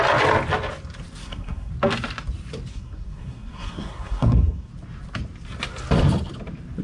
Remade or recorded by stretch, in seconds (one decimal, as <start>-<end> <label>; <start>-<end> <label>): 0.0-1.2 recorded; 1.2-1.7 remade; 1.7-2.7 recorded; 2.7-4.7 remade; 4.7-6.8 recorded